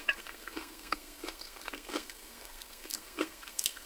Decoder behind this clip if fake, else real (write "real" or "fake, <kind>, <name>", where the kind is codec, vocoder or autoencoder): fake, codec, SNAC